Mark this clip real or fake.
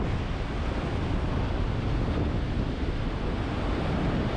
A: real